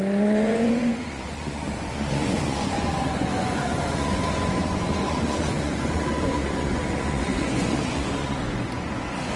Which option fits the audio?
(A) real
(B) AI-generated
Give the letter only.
B